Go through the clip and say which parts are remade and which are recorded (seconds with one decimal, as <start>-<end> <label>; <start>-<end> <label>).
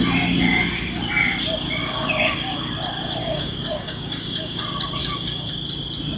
0.0-1.8 recorded; 1.8-2.7 remade; 2.7-3.2 recorded; 3.2-4.6 remade; 4.6-5.0 recorded; 5.0-5.5 remade; 5.5-6.2 recorded